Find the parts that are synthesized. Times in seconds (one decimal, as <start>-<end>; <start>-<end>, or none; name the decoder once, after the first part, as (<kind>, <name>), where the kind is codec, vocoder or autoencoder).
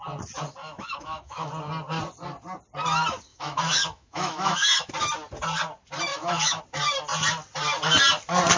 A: 0.6-1.5 (autoencoder, DAC-VAE); 3.3-4.9; 6.1-6.6